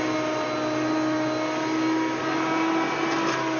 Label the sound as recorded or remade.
recorded